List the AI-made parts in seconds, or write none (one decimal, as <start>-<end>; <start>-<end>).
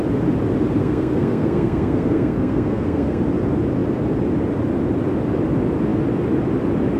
0.8-3.2